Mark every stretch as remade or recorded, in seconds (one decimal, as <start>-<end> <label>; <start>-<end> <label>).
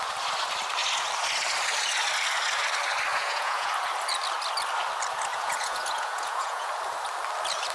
0.0-3.1 recorded; 3.1-3.7 remade; 3.7-5.3 recorded; 5.3-6.7 remade; 6.7-7.7 recorded